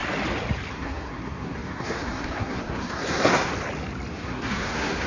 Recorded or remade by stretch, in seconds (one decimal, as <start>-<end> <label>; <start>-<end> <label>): 0.0-0.7 recorded; 0.7-3.5 remade; 3.5-4.1 recorded; 4.1-5.1 remade